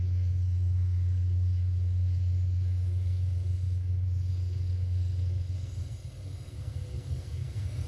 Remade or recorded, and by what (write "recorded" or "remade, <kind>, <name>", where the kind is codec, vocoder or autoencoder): remade, codec, SNAC